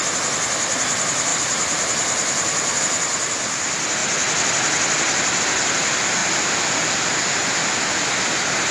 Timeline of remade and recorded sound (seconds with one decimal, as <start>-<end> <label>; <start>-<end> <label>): 0.0-1.3 recorded; 1.3-2.8 remade; 2.8-8.7 recorded